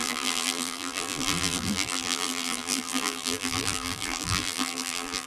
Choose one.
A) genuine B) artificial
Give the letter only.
B